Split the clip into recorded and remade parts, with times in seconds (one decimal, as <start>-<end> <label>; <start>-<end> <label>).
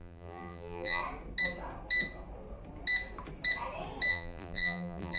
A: 0.0-1.0 remade; 1.0-4.1 recorded; 4.1-5.2 remade